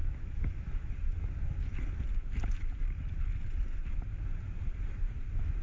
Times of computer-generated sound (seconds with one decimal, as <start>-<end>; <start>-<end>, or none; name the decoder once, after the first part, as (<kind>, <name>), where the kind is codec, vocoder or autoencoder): 0.0-0.9 (autoencoder, DAC-VAE)